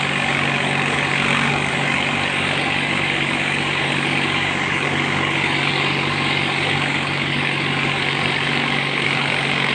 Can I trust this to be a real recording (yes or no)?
no